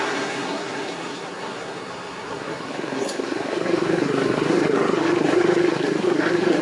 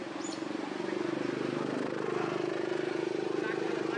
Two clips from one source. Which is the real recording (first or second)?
second